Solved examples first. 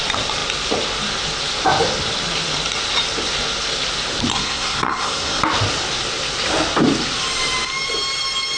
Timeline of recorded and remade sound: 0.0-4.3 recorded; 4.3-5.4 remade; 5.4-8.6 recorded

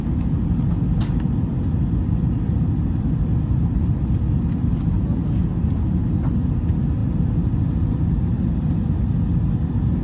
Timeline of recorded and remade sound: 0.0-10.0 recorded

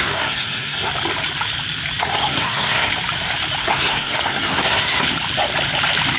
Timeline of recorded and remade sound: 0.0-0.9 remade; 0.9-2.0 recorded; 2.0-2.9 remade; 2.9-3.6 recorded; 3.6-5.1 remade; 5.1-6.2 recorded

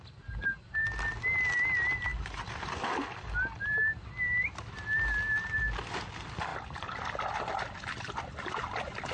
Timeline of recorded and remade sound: 0.0-9.1 recorded